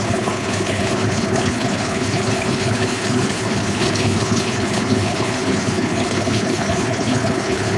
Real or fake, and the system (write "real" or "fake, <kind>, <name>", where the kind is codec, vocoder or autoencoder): fake, codec, HILCodec